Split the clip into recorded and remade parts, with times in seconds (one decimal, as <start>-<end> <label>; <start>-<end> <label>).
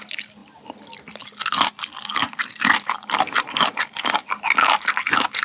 0.0-5.4 recorded